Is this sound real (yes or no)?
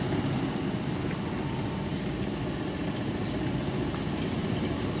yes